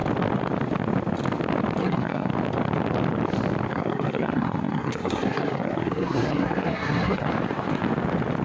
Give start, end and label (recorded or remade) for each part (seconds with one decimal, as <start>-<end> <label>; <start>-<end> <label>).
0.0-1.8 recorded; 1.8-2.3 remade; 2.3-3.7 recorded; 3.7-7.3 remade; 7.3-8.4 recorded

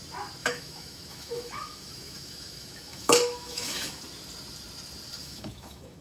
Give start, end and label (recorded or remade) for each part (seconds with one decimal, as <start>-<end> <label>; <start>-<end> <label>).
0.0-0.4 recorded; 0.4-4.0 remade; 4.0-5.2 recorded; 5.2-6.0 remade

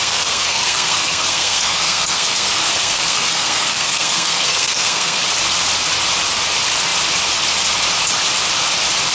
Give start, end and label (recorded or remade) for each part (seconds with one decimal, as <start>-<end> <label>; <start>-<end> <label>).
0.0-5.2 remade; 5.2-9.1 recorded

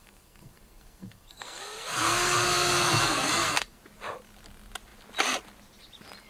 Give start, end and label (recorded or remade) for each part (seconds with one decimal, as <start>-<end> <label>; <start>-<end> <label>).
0.0-3.8 remade; 3.8-6.3 recorded